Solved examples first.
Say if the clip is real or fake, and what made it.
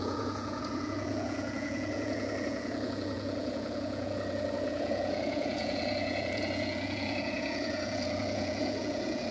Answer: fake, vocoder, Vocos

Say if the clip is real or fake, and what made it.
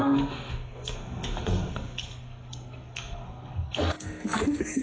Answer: fake, codec, SNAC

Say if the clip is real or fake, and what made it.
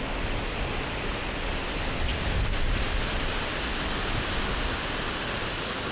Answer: real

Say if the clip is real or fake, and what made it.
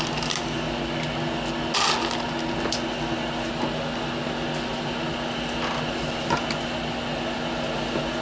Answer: real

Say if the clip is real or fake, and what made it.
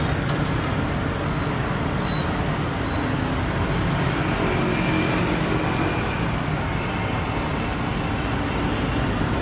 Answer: real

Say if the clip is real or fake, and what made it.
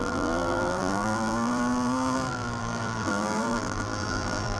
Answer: fake, vocoder, BigVGAN v2